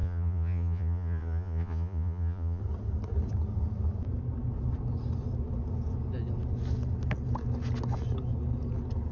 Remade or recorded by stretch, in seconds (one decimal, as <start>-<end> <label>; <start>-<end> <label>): 0.0-2.6 remade; 2.6-9.1 recorded